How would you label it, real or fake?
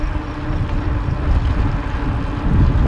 real